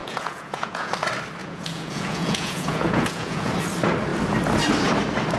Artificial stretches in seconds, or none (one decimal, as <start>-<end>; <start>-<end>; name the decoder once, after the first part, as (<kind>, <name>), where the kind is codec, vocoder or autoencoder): 0.0-0.9 (vocoder, Vocos); 1.4-3.5